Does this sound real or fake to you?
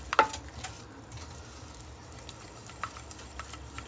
real